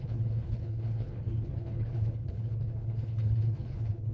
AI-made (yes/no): yes